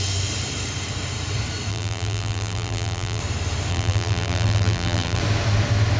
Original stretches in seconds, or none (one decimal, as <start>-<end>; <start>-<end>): 0.0-1.7; 3.2-3.7; 5.2-6.0

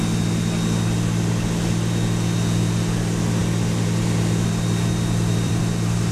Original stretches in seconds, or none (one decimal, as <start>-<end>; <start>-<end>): 0.0-3.4; 5.6-6.1

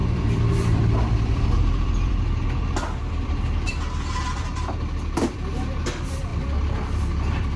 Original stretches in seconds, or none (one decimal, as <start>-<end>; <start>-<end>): none

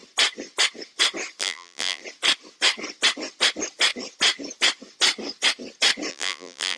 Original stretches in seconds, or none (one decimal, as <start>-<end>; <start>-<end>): 0.0-1.4; 2.0-6.1

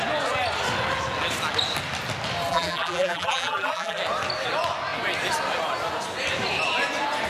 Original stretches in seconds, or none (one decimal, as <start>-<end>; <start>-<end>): 0.0-2.5; 4.0-7.3

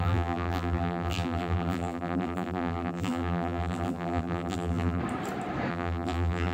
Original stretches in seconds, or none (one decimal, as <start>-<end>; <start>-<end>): 5.0-5.7

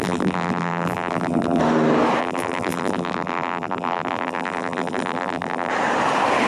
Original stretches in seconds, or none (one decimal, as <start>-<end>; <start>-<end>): 1.6-2.2; 5.7-6.5